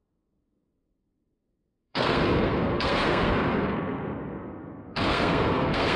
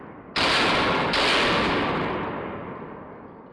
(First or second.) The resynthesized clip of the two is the first